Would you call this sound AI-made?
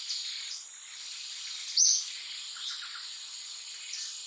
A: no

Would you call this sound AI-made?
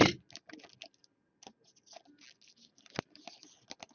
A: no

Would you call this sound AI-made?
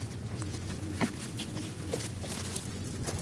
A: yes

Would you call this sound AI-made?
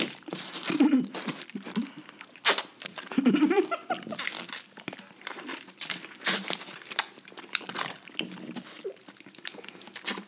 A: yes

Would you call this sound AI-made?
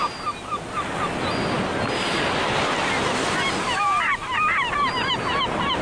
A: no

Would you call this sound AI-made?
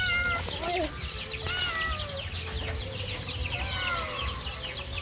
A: no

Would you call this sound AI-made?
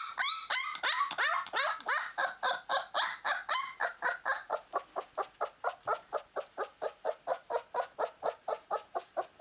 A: no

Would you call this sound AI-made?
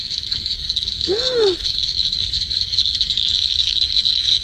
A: yes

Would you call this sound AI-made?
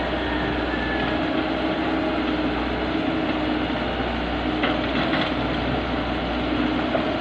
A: no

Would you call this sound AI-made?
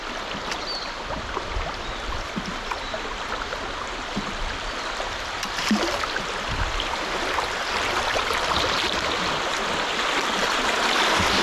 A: yes